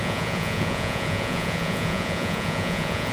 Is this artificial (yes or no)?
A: yes